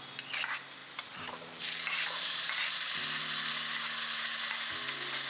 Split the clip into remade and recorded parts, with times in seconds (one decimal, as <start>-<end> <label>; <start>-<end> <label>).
0.0-0.8 recorded; 0.8-3.5 remade; 3.5-5.3 recorded